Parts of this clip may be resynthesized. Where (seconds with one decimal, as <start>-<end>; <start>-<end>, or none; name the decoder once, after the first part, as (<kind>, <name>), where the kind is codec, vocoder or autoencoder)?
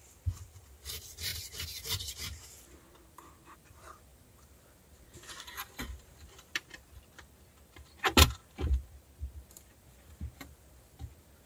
0.0-1.3 (vocoder, BigVGAN v2); 2.9-11.5